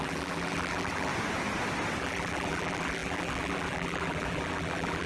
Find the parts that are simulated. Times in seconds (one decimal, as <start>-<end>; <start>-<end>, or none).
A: 0.0-1.1; 2.0-5.1